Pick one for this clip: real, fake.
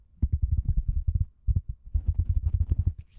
real